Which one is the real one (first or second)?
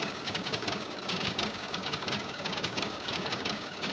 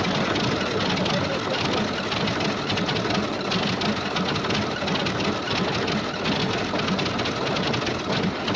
second